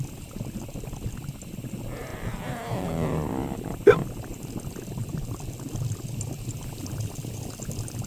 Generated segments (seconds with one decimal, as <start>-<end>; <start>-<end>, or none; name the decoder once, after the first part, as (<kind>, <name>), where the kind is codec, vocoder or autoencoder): none